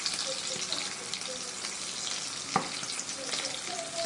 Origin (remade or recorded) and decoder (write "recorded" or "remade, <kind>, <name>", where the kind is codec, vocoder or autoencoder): recorded